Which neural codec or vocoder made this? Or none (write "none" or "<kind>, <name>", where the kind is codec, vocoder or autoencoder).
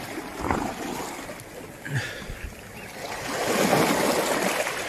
none